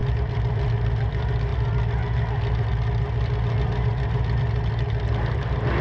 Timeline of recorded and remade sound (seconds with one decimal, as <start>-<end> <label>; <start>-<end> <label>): 0.0-5.8 recorded